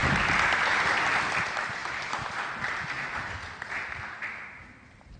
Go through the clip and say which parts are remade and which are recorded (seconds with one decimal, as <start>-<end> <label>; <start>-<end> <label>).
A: 0.0-5.2 recorded